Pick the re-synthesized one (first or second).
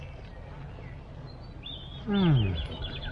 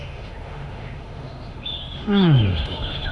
second